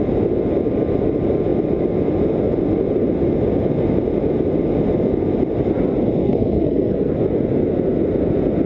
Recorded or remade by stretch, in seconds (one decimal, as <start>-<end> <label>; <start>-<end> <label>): 0.0-6.2 recorded; 6.2-7.1 remade; 7.1-8.7 recorded